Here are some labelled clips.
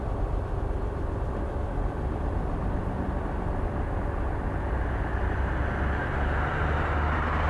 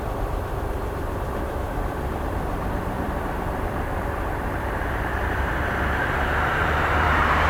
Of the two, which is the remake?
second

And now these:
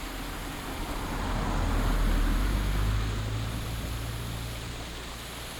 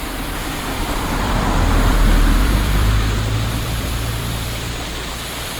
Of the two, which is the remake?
second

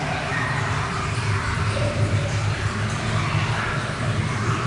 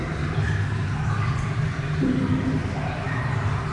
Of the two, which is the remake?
first